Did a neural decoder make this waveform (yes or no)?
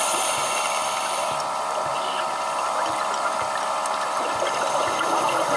yes